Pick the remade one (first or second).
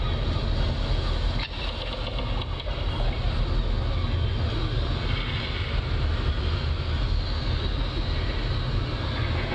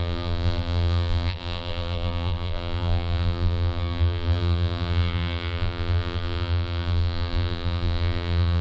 second